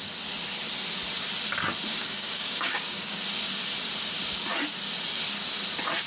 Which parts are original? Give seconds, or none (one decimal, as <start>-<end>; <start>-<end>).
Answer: 0.0-1.9; 3.2-6.1